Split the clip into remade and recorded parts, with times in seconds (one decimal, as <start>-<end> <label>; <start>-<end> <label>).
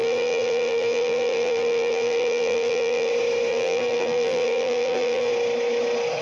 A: 0.0-3.1 remade; 3.1-3.5 recorded; 3.5-5.3 remade; 5.3-6.2 recorded